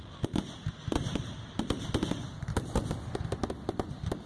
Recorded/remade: recorded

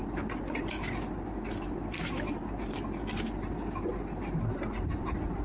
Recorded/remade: recorded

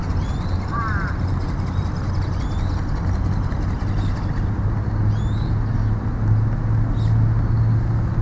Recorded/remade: recorded